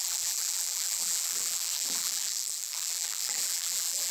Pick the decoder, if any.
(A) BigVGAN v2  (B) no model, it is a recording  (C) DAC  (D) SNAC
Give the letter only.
A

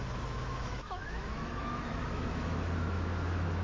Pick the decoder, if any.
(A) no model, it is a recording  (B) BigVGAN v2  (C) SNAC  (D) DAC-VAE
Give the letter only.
D